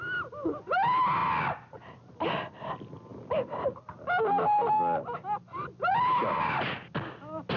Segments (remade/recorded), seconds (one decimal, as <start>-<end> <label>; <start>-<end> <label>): 0.0-6.2 recorded; 6.2-6.9 remade; 6.9-7.6 recorded